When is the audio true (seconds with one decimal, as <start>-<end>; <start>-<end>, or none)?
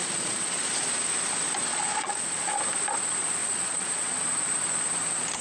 0.5-1.7; 2.5-3.4; 4.2-5.4